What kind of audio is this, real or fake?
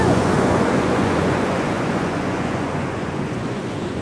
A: fake